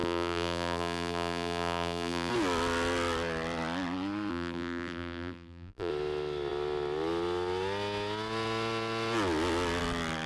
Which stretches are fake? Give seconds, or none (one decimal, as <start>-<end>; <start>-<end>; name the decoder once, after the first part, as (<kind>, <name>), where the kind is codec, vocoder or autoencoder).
0.0-2.3 (vocoder, BigVGAN v2); 4.3-5.9